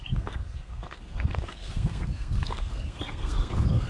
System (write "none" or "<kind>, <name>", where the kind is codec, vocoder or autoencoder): codec, SNAC